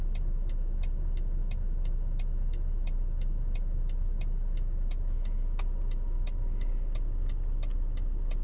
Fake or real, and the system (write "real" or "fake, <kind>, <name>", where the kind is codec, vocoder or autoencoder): real